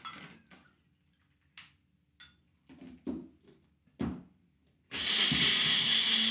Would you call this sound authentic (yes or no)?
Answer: yes